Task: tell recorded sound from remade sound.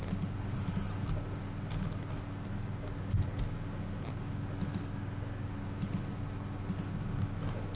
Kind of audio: recorded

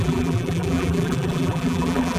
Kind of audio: remade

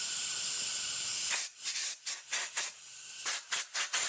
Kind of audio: recorded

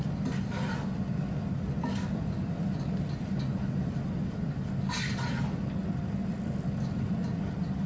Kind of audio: recorded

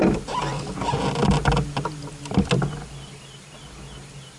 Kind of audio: recorded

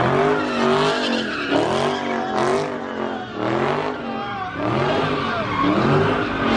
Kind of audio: recorded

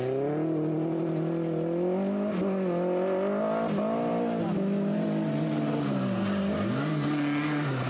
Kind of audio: recorded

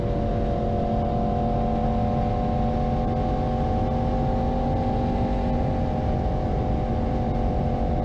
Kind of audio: recorded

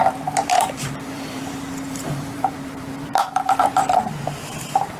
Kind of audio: remade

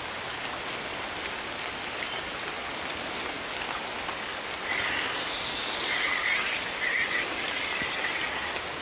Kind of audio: recorded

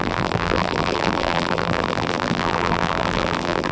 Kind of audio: remade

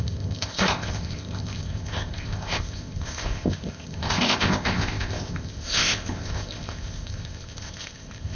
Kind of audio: remade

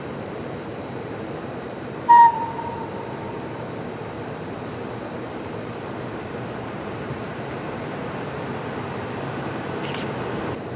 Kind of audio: remade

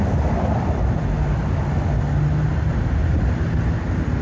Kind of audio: recorded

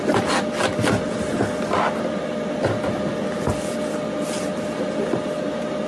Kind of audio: recorded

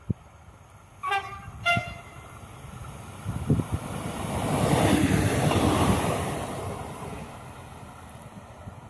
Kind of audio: remade